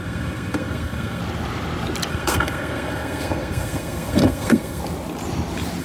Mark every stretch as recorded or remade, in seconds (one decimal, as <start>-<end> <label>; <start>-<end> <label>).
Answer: 0.0-1.2 remade; 1.2-2.1 recorded; 2.1-4.8 remade; 4.8-5.8 recorded